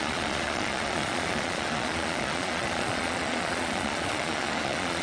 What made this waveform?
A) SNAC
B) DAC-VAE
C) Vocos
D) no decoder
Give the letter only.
C